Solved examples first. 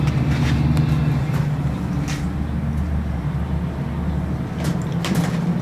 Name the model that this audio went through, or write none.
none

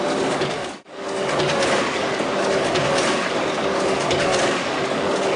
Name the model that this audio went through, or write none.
codec, DAC